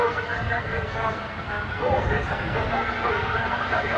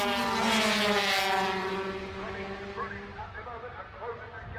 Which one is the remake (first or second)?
first